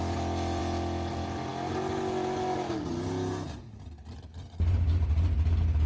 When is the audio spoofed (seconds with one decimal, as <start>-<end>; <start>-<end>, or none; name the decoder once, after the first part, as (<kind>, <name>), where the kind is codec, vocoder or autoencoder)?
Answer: none